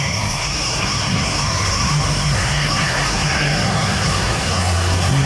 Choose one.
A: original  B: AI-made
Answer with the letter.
B